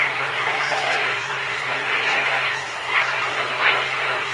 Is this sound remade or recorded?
remade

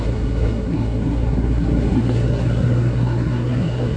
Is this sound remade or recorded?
remade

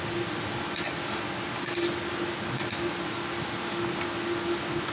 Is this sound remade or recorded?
recorded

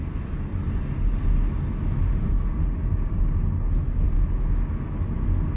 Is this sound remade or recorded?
recorded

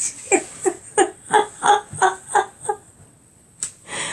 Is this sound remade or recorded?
recorded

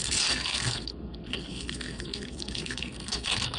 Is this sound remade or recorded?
remade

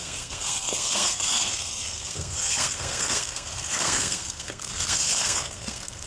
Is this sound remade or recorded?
remade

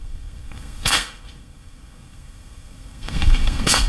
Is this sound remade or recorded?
remade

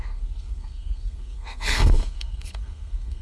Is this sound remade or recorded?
remade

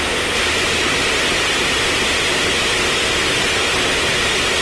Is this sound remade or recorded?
recorded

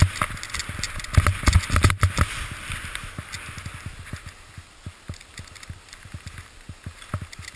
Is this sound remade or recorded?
recorded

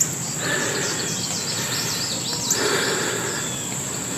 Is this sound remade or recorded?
recorded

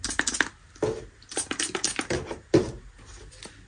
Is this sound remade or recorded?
recorded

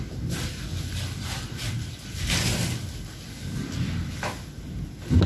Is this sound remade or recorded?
recorded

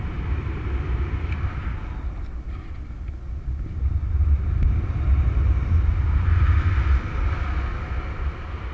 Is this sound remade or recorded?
recorded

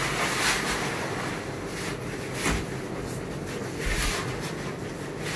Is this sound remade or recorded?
recorded